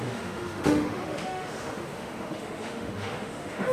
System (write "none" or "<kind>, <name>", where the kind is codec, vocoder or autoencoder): autoencoder, DAC-VAE